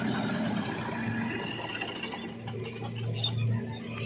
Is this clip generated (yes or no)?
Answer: no